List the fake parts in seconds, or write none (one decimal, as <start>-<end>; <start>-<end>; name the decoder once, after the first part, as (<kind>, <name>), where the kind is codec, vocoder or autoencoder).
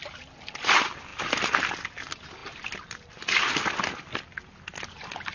none